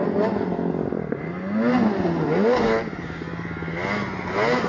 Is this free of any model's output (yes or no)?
yes